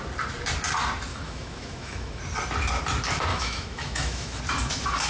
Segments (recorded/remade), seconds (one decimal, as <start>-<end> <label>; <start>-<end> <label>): 0.0-1.1 recorded; 1.1-2.2 remade; 2.2-3.3 recorded; 3.3-4.4 remade; 4.4-5.1 recorded